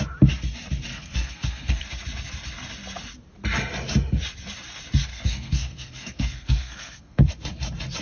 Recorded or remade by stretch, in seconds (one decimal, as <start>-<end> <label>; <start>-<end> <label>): 0.0-0.9 recorded; 0.9-1.8 remade; 1.8-5.1 recorded; 5.1-7.3 remade; 7.3-8.0 recorded